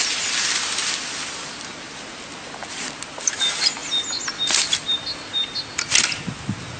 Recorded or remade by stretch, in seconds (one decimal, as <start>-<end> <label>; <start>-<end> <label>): 0.0-6.8 recorded